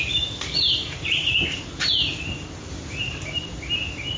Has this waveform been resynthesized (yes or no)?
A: no